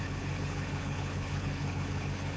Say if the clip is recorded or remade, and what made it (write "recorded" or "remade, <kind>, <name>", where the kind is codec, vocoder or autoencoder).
remade, codec, HILCodec